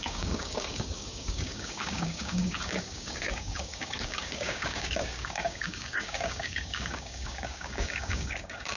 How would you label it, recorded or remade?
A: remade